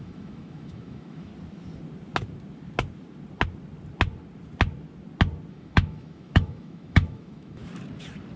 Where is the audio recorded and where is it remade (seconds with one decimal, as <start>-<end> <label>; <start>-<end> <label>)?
0.0-1.3 remade; 1.3-5.5 recorded; 5.5-7.6 remade; 7.6-8.4 recorded